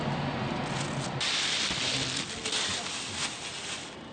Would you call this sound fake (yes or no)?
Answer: no